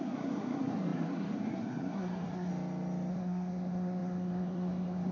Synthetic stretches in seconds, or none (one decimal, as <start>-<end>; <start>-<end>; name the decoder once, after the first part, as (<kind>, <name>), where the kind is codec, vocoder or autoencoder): 0.0-2.5 (codec, SNAC); 3.1-5.1